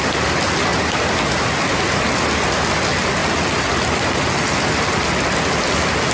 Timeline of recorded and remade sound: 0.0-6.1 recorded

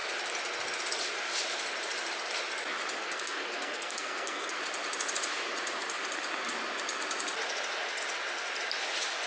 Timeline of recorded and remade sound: 0.0-3.0 recorded; 3.0-4.6 remade; 4.6-9.3 recorded

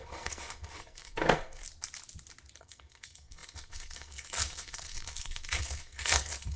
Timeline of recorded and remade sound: 0.0-1.6 remade; 1.6-2.6 recorded; 2.6-6.6 remade

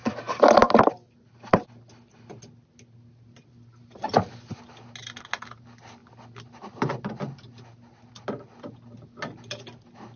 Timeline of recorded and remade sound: 0.0-10.2 recorded

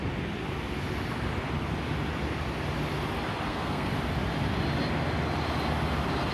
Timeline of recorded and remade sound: 0.0-3.5 recorded; 3.5-3.9 remade; 3.9-6.3 recorded

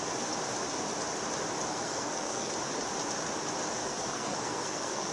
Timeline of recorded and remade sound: 0.0-1.7 recorded; 1.7-2.5 remade; 2.5-3.8 recorded; 3.8-5.1 remade

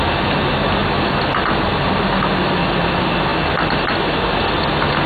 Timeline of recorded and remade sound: 0.0-5.1 recorded

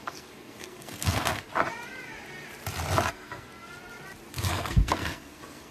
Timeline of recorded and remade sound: 0.0-1.5 remade; 1.5-3.1 recorded; 3.1-3.5 remade; 3.5-4.3 recorded; 4.3-5.7 remade